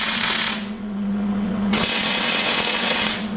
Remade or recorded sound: remade